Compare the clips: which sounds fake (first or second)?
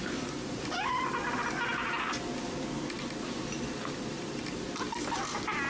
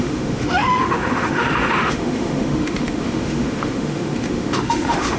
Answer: second